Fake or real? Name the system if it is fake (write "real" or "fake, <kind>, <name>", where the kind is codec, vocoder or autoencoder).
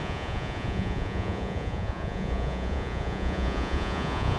fake, vocoder, Vocos